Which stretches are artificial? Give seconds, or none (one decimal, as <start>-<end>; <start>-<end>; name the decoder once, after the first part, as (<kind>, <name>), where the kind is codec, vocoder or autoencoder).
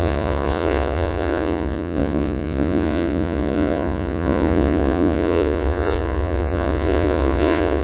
0.0-7.8 (vocoder, Vocos)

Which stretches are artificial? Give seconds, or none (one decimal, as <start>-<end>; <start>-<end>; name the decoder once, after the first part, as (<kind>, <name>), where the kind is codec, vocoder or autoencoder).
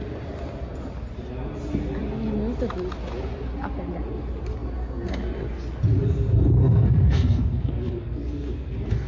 6.6-9.1 (codec, SNAC)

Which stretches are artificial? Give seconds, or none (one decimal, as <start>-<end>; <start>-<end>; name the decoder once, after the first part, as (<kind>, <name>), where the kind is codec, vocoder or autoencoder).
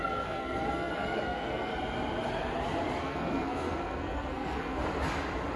0.0-1.7 (codec, SNAC); 3.0-4.8